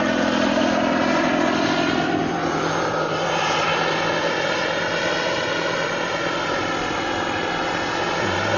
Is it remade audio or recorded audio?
remade